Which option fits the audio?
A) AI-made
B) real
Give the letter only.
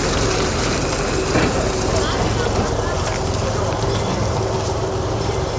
B